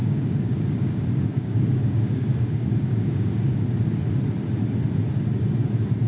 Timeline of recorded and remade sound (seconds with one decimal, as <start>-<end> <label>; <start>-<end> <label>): 0.0-3.7 remade; 3.7-6.1 recorded